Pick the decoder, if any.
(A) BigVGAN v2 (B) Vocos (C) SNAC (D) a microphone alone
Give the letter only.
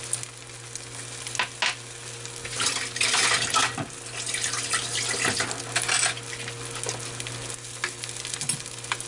D